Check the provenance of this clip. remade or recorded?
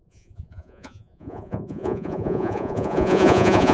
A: remade